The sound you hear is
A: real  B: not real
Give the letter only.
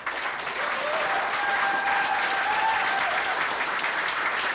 A